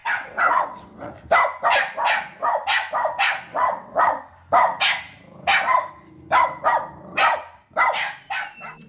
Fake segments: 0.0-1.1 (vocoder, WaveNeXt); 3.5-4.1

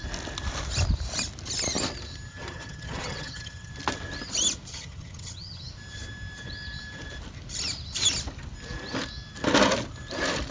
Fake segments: 2.3-3.7 (vocoder, HiFi-GAN); 4.7-5.7

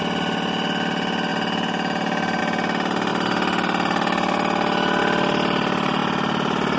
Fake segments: none

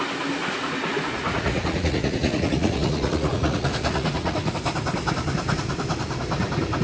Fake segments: 0.4-4.5 (vocoder, Vocos)

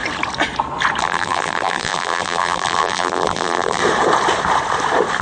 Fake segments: 1.0-3.8 (vocoder, BigVGAN v2)

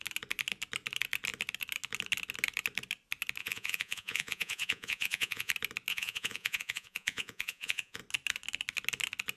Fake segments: 3.4-5.5 (vocoder, Vocos); 5.9-8.0